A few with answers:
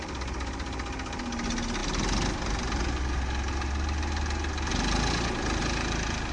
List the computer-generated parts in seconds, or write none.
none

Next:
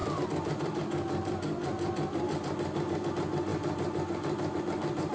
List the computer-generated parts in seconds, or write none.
0.0-3.1 (vocoder, BigVGAN v2)

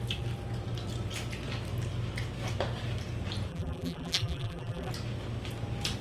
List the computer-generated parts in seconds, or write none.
3.5-4.9 (vocoder, BigVGAN v2)

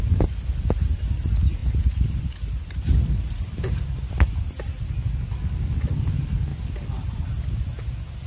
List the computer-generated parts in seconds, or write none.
6.5-7.6 (vocoder, BigVGAN v2)